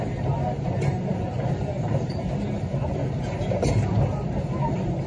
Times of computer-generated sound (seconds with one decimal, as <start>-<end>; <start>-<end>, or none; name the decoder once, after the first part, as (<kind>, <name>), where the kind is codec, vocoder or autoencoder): none

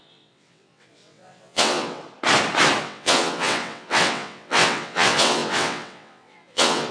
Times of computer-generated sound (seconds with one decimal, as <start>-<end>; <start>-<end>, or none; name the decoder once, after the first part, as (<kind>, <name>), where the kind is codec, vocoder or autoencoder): 0.0-2.0 (vocoder, WaveNeXt); 2.8-6.9

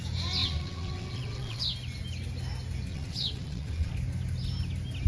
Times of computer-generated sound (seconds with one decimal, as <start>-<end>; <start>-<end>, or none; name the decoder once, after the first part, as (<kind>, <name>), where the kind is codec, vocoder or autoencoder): 0.4-1.6 (vocoder, WaveNeXt); 2.9-3.9

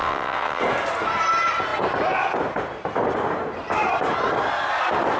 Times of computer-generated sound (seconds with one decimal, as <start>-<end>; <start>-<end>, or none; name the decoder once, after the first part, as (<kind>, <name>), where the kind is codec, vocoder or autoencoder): 0.0-0.6 (vocoder, WaveNeXt)

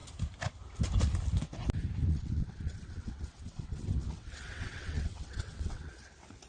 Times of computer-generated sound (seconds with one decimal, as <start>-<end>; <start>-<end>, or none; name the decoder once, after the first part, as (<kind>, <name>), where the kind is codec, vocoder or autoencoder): 2.0-5.9 (vocoder, WaveNeXt)

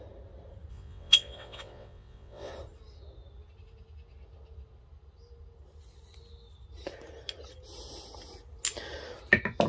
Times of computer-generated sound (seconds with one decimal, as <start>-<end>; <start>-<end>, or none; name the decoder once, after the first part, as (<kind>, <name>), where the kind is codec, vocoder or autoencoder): 0.7-2.5 (vocoder, WaveNeXt)

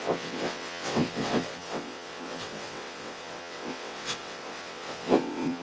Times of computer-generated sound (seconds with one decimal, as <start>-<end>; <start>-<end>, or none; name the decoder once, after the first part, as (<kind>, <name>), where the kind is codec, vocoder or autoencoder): 0.0-5.6 (vocoder, WaveNeXt)